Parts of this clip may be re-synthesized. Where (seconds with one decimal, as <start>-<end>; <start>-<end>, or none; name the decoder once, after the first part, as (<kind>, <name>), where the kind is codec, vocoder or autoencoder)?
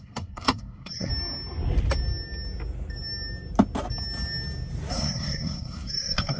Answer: 0.0-1.1 (codec, SNAC); 4.9-6.4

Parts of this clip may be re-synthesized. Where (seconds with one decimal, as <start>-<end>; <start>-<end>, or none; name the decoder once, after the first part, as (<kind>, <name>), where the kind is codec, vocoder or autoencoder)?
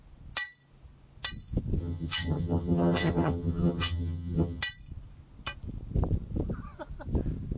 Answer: 1.8-4.6 (vocoder, HiFi-GAN)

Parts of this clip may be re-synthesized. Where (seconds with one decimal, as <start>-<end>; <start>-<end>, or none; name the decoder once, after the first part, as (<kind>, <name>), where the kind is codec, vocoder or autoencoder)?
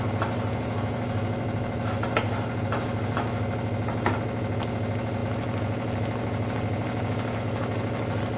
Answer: none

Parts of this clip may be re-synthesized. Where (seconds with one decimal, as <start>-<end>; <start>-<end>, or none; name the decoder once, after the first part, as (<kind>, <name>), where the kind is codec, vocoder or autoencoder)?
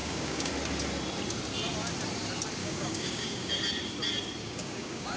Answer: 0.0-0.5 (codec, DAC); 2.6-3.5; 4.4-5.2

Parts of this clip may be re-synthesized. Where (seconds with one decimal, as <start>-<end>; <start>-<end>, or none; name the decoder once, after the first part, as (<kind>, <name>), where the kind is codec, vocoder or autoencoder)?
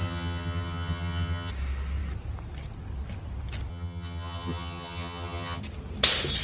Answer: 0.0-1.5 (vocoder, HiFi-GAN); 3.7-5.6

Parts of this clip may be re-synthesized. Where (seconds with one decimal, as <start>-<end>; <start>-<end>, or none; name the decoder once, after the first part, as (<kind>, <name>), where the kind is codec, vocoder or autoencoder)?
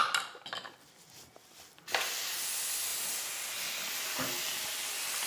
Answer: none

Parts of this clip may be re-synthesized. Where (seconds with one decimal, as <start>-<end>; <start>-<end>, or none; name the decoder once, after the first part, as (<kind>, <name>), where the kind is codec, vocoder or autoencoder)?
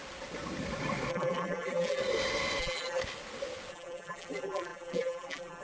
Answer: 1.1-2.0 (vocoder, BigVGAN v2); 2.6-3.0; 3.7-5.6